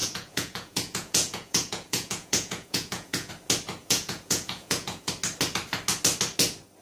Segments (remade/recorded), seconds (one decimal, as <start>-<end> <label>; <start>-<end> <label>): 0.0-3.3 remade; 3.3-3.8 recorded; 3.8-5.1 remade; 5.1-6.8 recorded